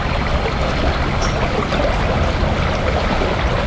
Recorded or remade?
recorded